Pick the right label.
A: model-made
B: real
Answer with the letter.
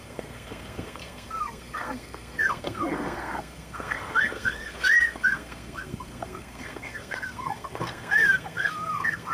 A